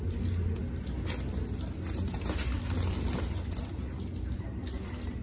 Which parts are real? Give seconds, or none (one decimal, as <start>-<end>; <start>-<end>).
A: 0.0-5.2